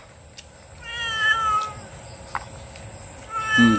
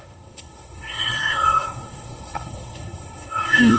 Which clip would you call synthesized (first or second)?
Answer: second